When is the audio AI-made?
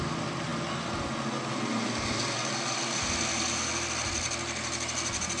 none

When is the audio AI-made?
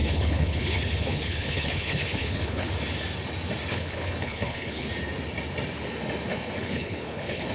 0.0-2.7 (codec, HILCodec); 3.7-4.9; 6.3-7.5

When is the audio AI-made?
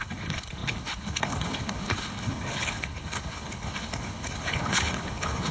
0.0-5.5 (codec, HILCodec)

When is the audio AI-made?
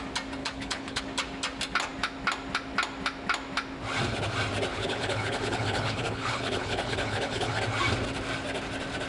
0.4-1.0 (codec, HILCodec); 4.7-7.6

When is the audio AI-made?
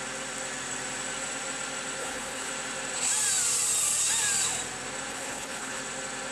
2.0-2.5 (codec, HILCodec); 5.1-5.8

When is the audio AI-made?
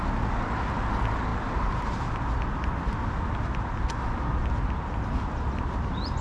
none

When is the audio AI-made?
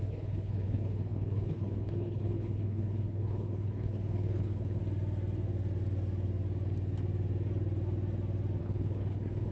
0.0-4.8 (codec, HILCodec); 8.6-9.5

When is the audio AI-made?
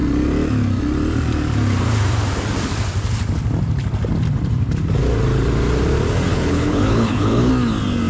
6.3-7.5 (codec, HILCodec)